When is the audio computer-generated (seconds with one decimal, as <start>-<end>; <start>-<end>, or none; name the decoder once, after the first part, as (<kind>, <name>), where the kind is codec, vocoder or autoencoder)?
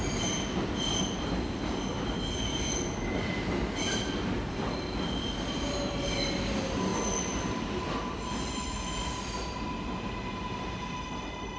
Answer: none